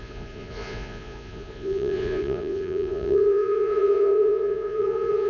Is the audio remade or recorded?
remade